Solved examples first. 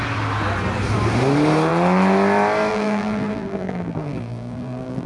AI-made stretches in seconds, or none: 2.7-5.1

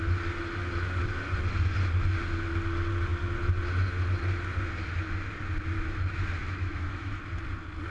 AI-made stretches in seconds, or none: 6.4-7.2

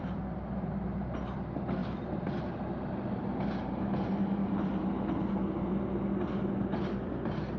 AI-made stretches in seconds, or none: 1.8-2.9; 4.4-4.9

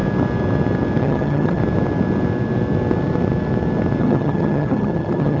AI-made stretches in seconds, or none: 1.0-1.6; 4.0-5.4